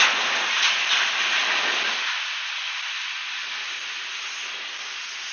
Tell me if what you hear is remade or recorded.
recorded